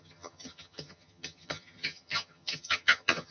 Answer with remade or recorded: remade